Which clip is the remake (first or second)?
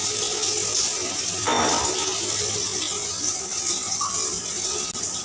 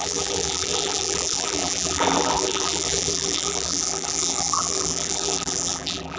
second